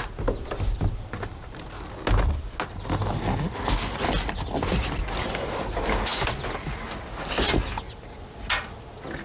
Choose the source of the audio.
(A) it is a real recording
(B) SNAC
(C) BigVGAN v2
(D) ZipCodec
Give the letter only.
A